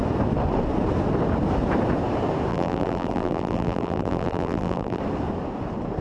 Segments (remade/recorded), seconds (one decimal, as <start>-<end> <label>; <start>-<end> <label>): 0.0-2.5 recorded; 2.5-5.0 remade; 5.0-6.0 recorded